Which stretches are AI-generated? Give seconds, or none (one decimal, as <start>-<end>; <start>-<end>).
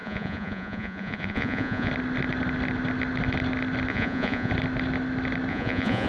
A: 0.0-1.9; 3.9-4.5; 5.5-6.1